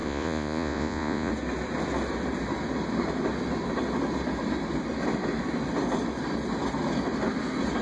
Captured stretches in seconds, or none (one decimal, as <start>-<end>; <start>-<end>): 1.3-7.8